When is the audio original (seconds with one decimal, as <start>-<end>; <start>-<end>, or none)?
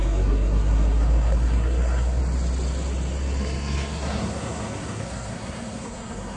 2.2-3.4